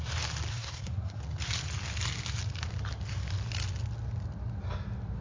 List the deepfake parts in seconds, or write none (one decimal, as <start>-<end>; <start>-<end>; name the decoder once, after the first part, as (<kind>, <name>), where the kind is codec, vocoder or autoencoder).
0.5-1.2 (codec, SNAC)